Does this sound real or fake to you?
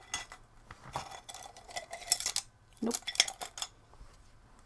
real